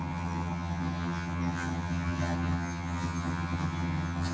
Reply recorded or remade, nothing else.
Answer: remade